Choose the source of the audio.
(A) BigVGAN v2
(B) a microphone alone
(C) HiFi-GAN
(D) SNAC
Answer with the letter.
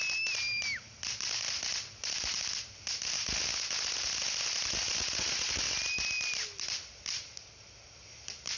B